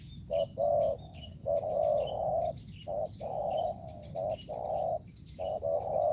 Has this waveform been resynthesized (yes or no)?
no